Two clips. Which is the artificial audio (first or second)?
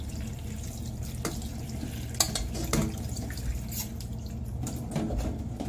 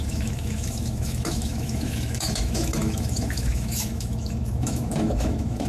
second